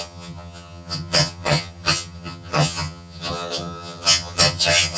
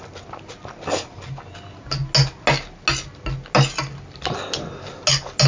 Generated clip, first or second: first